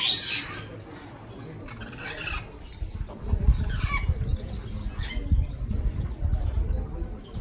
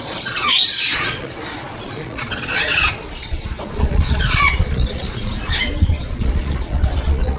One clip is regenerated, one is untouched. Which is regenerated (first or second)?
second